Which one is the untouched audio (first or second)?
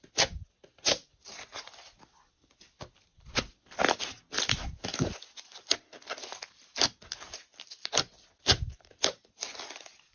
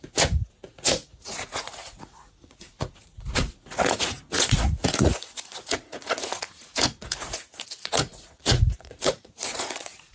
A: first